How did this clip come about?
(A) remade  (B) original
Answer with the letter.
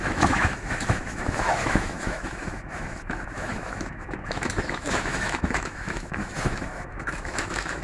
A